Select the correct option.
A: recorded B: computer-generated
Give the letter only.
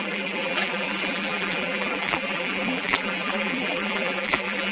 B